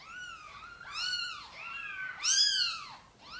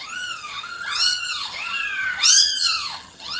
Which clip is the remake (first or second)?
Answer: second